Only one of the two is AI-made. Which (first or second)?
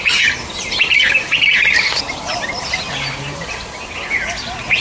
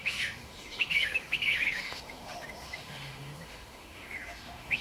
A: second